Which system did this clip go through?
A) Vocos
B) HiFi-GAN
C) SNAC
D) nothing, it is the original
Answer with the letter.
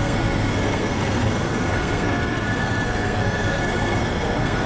C